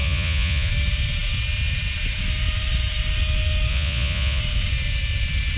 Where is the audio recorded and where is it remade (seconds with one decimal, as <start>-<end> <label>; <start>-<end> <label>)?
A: 0.0-0.7 remade; 0.7-3.7 recorded; 3.7-4.4 remade; 4.4-5.6 recorded